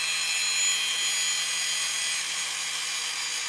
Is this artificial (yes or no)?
no